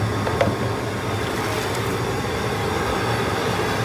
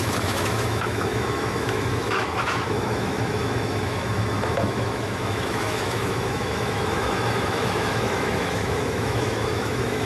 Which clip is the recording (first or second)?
first